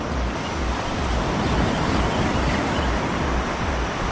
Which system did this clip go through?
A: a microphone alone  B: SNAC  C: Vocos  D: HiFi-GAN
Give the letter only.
A